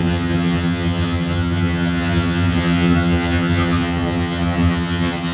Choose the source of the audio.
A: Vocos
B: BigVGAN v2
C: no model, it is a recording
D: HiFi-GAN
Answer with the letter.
D